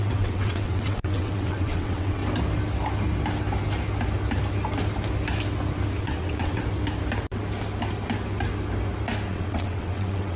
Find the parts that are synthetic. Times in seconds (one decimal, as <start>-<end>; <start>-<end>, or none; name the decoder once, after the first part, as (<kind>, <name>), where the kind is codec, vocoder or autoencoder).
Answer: 0.0-2.2 (vocoder, WaveNeXt); 6.0-6.6; 9.3-10.4